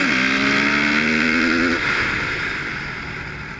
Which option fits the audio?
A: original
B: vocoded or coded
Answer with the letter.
A